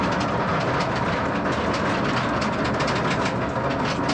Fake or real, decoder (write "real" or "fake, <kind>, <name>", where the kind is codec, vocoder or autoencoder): real